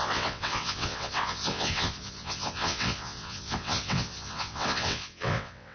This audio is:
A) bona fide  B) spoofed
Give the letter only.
B